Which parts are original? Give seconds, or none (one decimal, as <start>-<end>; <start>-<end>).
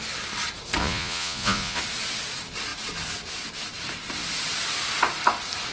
0.0-0.8; 1.8-5.7